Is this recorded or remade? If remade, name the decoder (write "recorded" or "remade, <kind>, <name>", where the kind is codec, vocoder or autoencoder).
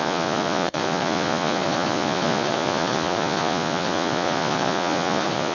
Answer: remade, vocoder, Vocos